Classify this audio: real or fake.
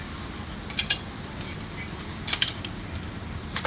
real